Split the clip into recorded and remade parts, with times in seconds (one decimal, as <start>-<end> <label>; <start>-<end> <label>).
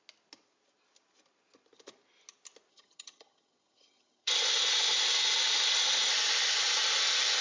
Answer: 0.0-2.7 recorded; 2.7-4.3 remade; 4.3-7.4 recorded